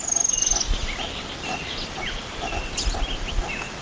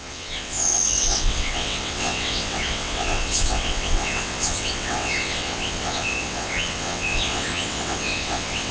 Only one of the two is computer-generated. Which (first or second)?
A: second